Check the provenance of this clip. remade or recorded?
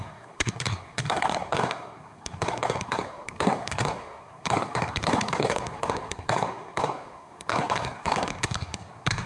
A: remade